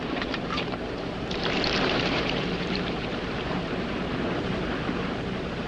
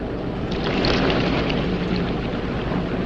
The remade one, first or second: first